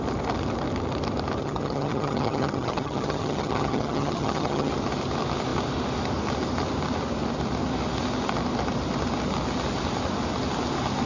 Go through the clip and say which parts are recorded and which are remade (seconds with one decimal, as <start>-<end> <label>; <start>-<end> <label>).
0.0-1.4 recorded; 1.4-4.7 remade; 4.7-11.1 recorded